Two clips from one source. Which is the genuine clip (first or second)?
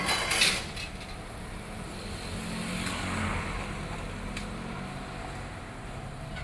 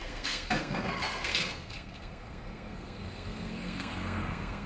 first